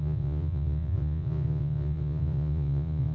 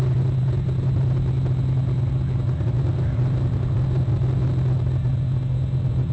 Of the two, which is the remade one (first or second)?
first